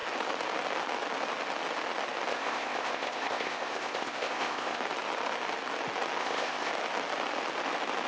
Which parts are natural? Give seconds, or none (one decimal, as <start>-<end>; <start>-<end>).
0.0-2.3; 4.8-6.2; 6.7-8.1

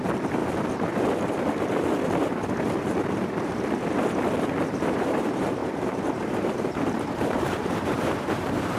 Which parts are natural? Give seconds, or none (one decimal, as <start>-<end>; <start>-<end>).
0.4-4.6

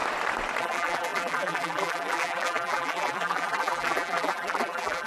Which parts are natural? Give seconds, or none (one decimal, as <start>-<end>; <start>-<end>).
0.0-0.6